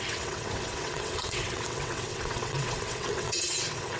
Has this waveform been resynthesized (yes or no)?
yes